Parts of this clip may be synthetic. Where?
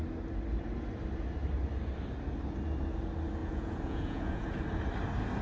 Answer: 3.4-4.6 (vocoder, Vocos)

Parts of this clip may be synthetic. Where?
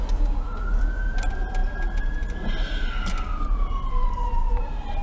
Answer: none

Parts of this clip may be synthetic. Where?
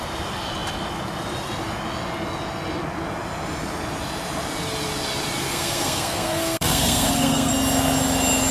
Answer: 5.5-7.5 (codec, SNAC)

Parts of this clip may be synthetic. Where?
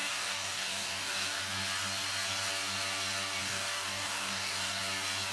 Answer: 0.0-1.4 (codec, DAC); 3.4-4.8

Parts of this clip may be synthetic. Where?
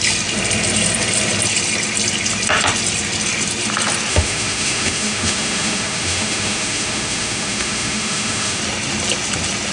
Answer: 4.1-8.6 (autoencoder, DAC-VAE)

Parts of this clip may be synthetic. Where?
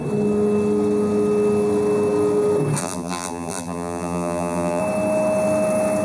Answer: 2.8-4.8 (vocoder, BigVGAN v2)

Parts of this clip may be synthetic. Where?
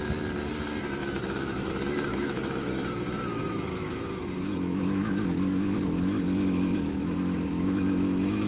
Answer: 1.0-1.7 (autoencoder, DAC-VAE); 2.1-2.7; 3.4-8.5